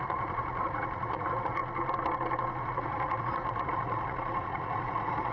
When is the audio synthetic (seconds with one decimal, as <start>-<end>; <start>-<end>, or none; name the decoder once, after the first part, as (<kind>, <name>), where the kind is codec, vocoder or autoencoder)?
0.0-1.6 (vocoder, Vocos); 2.6-5.3